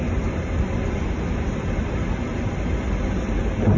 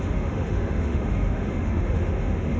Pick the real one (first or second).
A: first